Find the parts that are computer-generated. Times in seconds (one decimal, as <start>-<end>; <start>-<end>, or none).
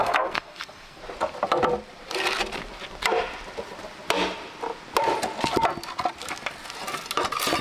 0.0-1.0